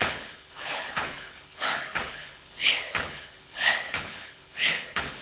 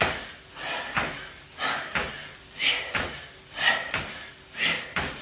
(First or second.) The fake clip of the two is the first